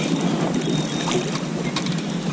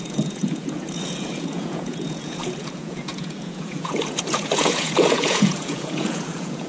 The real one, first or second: first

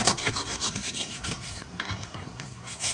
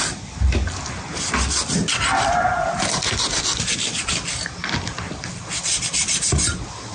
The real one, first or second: second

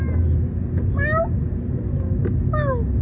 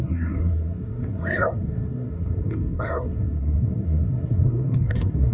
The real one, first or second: first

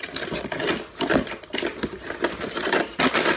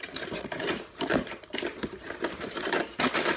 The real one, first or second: first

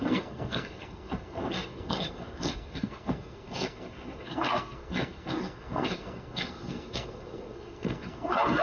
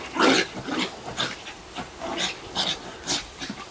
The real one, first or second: second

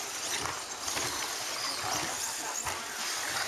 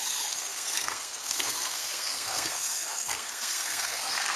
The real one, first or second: first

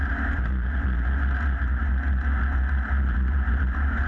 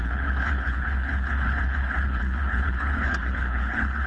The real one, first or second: first